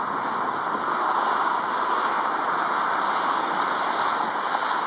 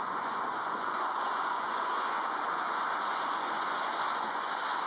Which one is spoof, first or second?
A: second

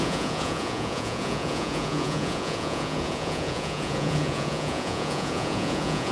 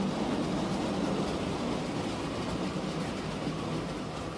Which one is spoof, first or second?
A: first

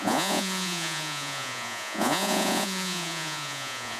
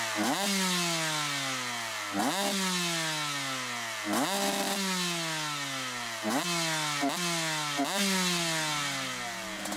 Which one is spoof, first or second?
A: first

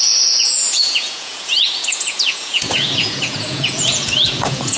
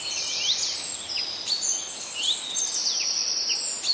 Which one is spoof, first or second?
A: first